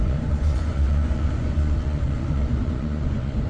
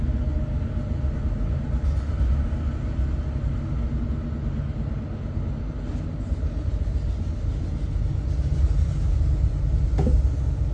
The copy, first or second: first